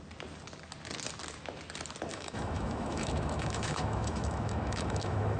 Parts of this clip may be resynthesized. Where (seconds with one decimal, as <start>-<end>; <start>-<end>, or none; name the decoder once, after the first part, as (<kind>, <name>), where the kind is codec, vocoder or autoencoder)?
2.1-5.4 (autoencoder, DAC-VAE)